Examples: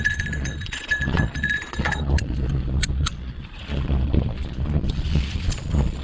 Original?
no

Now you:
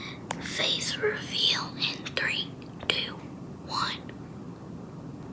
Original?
yes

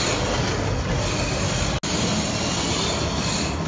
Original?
yes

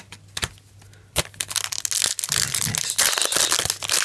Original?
yes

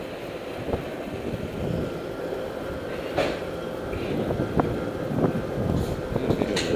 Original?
yes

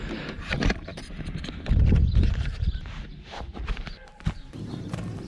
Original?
no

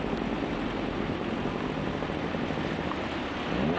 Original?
yes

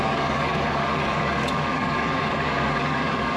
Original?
no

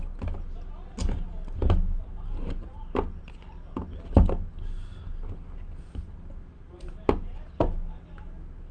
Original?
yes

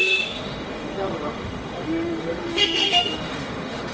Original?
no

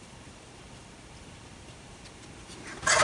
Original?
yes